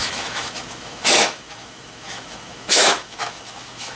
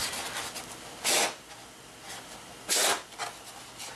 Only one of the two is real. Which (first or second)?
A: second